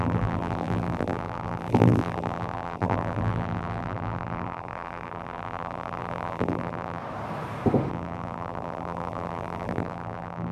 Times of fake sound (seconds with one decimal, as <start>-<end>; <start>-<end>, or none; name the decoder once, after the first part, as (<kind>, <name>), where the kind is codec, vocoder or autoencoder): 0.0-7.0 (vocoder, BigVGAN v2); 7.9-10.5